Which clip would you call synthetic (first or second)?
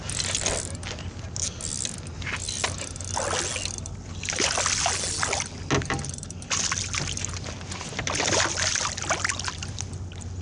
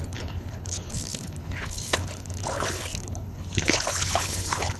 second